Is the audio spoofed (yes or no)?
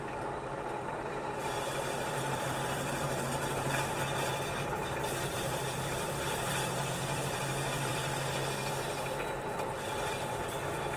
yes